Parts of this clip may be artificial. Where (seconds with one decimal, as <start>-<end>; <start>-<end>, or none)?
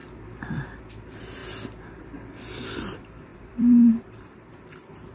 3.3-5.1